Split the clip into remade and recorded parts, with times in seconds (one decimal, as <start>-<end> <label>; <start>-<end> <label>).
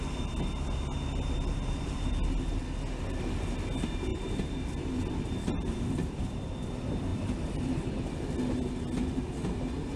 0.0-10.0 recorded